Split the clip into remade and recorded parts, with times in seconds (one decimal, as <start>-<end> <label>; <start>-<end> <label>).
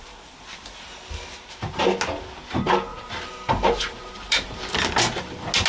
0.0-2.9 recorded; 2.9-4.8 remade; 4.8-5.7 recorded